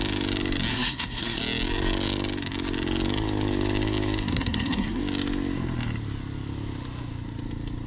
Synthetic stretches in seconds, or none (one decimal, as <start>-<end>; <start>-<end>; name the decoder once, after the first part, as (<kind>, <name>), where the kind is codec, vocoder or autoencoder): 0.7-1.4 (codec, SNAC); 4.3-5.0